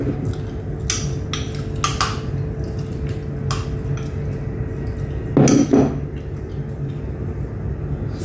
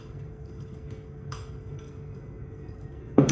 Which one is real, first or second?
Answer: first